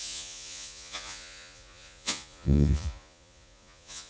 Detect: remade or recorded remade